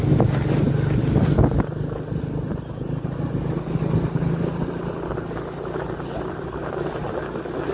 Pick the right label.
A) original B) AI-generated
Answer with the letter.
A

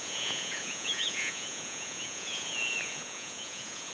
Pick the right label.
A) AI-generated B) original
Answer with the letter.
A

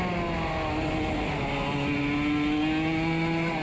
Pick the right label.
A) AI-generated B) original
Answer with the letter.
B